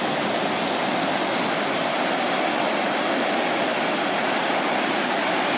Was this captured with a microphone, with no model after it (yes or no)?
yes